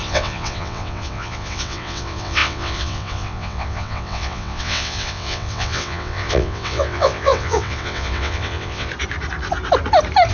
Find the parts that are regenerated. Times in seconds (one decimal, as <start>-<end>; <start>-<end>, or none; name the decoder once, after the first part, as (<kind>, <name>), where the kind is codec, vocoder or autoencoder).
0.0-8.9 (vocoder, WaveNeXt)